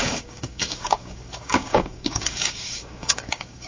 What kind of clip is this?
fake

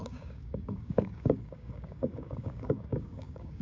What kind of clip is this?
fake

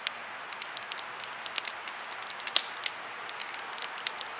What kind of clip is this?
real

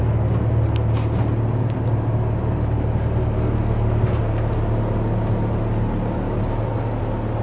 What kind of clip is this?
real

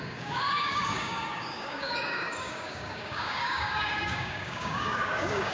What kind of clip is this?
fake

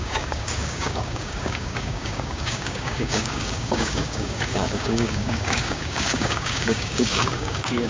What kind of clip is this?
fake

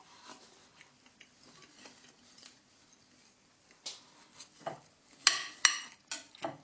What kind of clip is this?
real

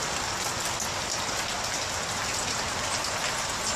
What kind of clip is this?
real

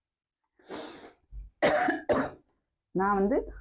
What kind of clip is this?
real